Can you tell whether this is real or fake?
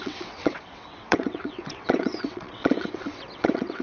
fake